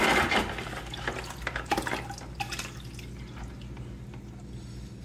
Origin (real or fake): real